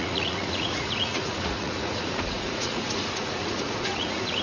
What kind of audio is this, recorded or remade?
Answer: remade